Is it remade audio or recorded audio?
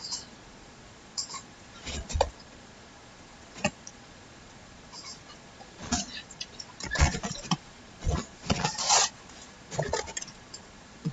remade